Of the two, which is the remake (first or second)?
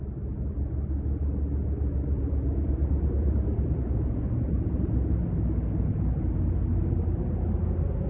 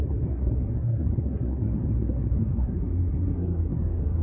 second